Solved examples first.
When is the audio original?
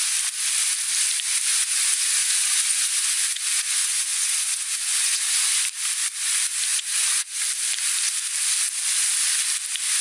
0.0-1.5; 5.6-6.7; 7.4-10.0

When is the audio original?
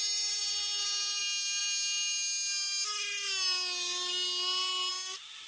0.0-5.5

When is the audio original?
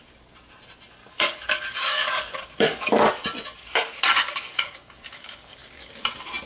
0.0-1.0; 3.1-3.6; 5.9-6.5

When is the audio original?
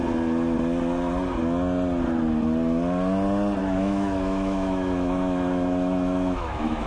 0.0-3.6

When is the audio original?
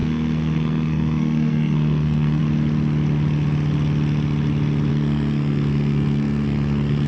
2.4-4.9